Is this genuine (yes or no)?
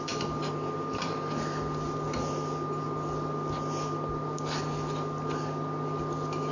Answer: yes